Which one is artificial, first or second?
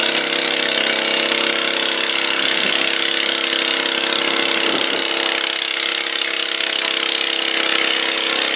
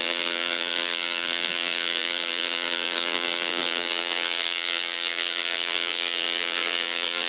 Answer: second